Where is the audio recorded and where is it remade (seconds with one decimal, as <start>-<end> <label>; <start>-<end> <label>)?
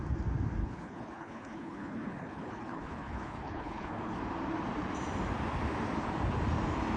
0.0-0.6 recorded; 0.6-4.2 remade; 4.2-7.0 recorded